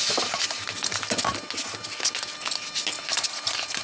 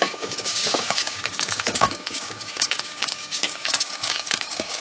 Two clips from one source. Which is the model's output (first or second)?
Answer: second